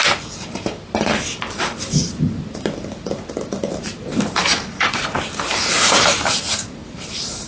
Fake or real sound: fake